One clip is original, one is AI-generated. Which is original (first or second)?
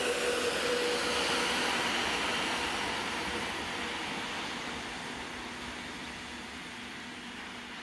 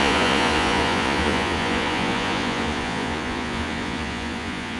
first